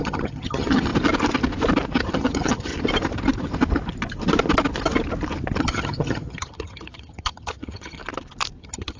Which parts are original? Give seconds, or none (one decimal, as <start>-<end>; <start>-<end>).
0.9-2.1; 2.7-5.6; 8.0-8.6